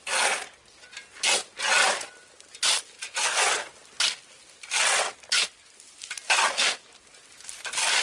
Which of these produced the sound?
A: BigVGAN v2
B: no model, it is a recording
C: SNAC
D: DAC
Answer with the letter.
B